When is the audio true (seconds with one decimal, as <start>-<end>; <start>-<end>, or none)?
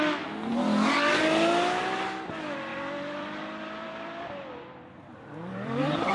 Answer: 0.0-2.7